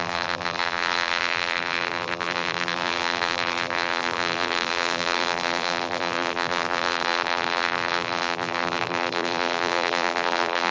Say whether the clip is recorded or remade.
remade